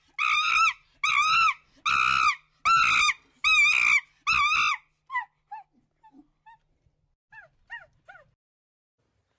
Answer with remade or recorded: recorded